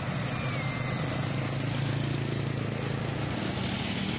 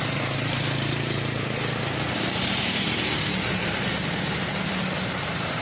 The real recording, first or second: first